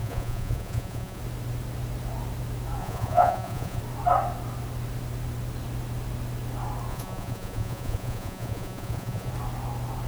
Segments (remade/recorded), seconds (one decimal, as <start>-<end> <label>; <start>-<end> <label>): 0.0-1.2 remade; 1.2-2.8 recorded; 2.8-3.8 remade; 3.8-6.9 recorded; 6.9-9.3 remade; 9.3-10.1 recorded